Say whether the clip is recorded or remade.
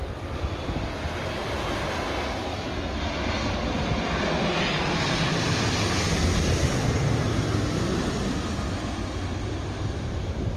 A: recorded